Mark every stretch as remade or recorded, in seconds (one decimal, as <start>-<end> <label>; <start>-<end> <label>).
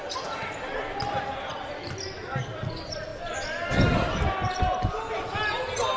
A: 0.0-6.0 recorded